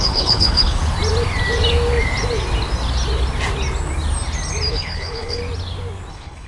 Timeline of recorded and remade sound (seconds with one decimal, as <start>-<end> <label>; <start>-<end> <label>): 0.0-0.8 remade; 0.8-4.7 recorded; 4.7-5.4 remade; 5.4-6.1 recorded; 6.1-6.5 remade